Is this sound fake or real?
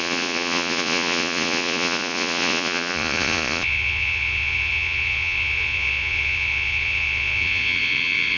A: fake